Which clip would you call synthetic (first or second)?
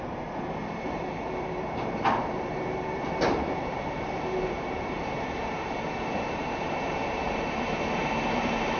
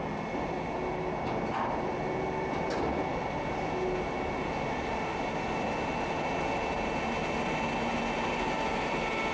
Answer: first